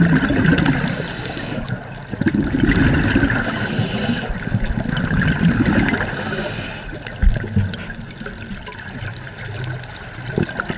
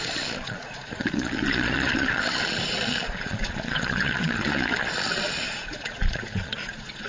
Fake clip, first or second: second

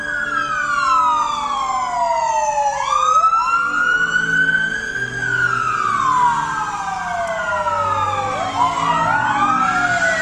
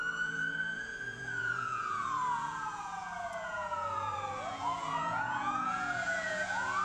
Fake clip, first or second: second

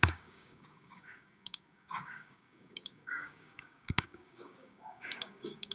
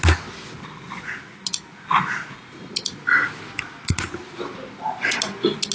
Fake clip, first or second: first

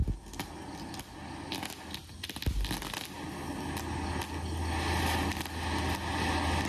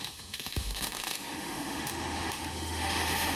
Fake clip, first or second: second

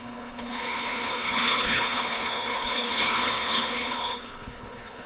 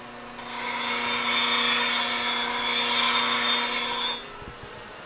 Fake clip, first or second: first